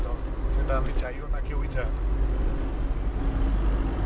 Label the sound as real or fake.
real